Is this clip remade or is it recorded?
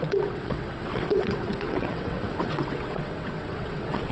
remade